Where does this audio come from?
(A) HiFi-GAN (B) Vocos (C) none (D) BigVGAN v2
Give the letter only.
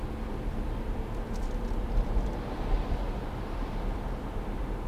C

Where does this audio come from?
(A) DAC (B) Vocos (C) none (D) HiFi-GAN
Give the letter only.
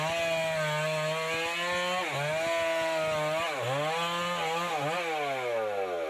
C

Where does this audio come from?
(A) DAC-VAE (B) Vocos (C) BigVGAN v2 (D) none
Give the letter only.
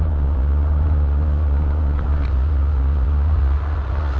B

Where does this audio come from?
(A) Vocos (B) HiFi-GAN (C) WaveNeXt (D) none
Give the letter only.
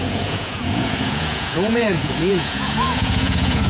A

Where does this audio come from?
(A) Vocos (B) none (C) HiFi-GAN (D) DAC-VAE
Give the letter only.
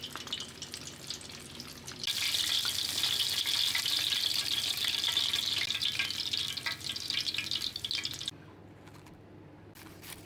B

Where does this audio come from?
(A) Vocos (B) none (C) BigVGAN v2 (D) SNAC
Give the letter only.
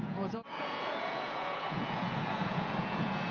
A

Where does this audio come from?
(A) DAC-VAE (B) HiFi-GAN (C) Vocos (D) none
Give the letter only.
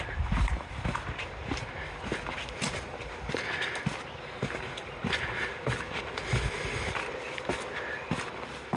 D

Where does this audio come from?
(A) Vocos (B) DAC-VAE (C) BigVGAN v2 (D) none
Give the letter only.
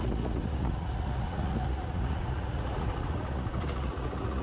A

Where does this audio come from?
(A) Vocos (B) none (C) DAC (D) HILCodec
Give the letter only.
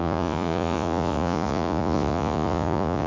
A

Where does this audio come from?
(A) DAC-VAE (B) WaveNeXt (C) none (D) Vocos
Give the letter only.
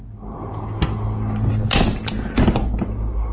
C